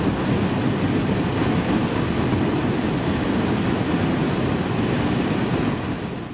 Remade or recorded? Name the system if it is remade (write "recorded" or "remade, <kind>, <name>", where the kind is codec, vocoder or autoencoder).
recorded